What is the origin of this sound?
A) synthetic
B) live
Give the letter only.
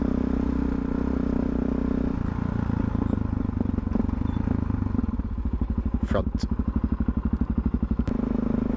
B